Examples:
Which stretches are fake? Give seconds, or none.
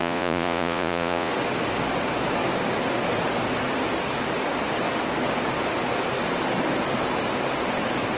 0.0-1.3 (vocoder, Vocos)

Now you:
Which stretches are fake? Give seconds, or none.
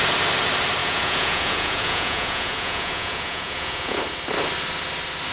0.8-4.0 (vocoder, Vocos)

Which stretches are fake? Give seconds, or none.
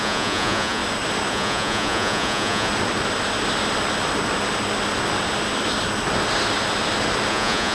0.0-0.8 (vocoder, Vocos); 1.3-2.7; 7.3-7.7